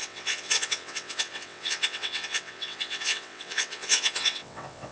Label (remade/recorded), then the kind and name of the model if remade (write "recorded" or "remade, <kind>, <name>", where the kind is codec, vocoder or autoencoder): remade, vocoder, WaveNeXt